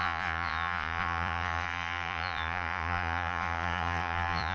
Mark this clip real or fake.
fake